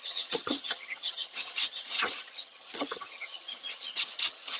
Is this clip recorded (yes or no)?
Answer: no